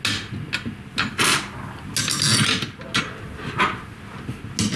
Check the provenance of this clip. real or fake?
real